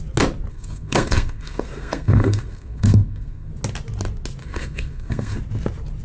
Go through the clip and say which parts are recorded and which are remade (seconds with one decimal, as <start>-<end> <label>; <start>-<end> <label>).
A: 0.0-0.5 recorded; 0.5-3.5 remade; 3.5-4.4 recorded; 4.4-5.4 remade; 5.4-6.0 recorded